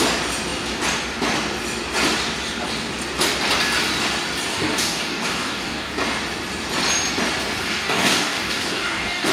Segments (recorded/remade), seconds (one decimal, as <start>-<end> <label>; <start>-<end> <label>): 0.0-4.5 recorded; 4.5-5.9 remade; 5.9-7.6 recorded; 7.6-9.3 remade

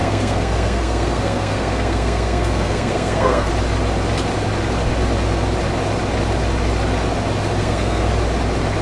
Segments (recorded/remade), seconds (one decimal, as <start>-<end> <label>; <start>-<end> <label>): 0.0-3.5 remade; 3.5-7.6 recorded; 7.6-8.1 remade; 8.1-8.8 recorded